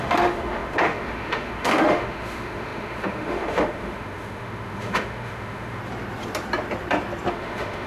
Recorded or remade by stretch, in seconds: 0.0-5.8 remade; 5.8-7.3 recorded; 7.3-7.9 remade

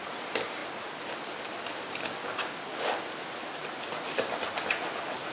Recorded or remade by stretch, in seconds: 0.0-5.3 recorded

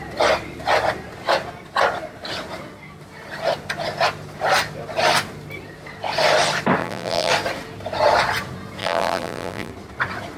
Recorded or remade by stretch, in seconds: 0.0-6.8 recorded; 6.8-7.3 remade; 7.3-8.8 recorded; 8.8-9.7 remade; 9.7-10.4 recorded

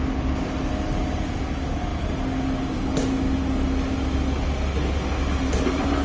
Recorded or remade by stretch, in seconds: 0.0-6.0 recorded

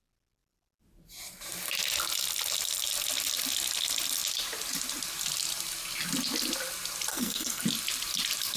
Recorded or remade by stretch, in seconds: 0.0-7.1 recorded; 7.1-7.6 remade; 7.6-8.6 recorded